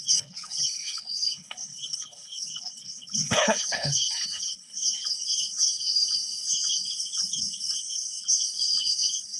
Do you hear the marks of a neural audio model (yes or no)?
yes